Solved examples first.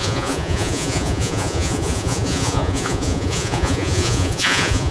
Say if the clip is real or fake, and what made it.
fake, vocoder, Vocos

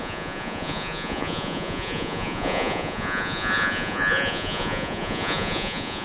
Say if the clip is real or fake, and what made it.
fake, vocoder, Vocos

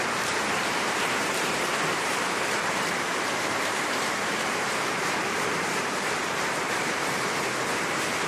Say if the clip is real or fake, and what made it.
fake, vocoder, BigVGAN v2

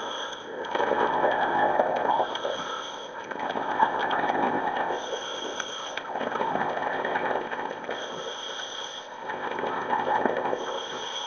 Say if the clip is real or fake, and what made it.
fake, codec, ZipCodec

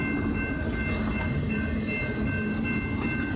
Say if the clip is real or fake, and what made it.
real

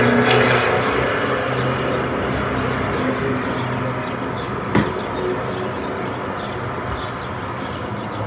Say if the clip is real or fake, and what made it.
real